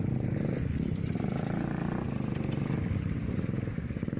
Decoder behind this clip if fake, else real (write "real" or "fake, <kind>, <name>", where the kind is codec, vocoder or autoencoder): real